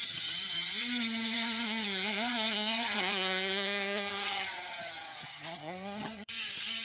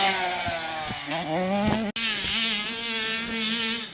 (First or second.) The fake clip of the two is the first